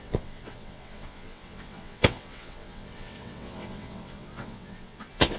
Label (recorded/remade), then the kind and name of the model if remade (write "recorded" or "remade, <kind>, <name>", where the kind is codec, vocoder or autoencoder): remade, vocoder, WaveNeXt